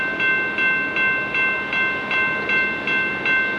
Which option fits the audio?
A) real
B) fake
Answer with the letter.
A